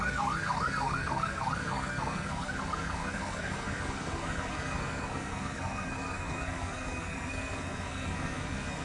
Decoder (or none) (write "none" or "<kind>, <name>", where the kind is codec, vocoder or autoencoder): codec, SNAC